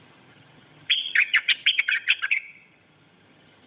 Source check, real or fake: fake